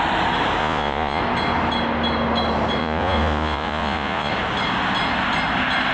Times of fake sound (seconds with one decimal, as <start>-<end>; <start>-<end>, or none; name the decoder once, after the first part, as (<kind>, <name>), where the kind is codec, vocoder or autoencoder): 0.6-1.2 (vocoder, Vocos); 2.8-4.3